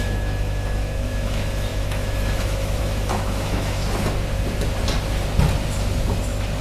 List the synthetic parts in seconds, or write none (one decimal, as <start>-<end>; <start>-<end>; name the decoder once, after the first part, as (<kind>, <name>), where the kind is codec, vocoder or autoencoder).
0.0-3.8 (autoencoder, DAC-VAE)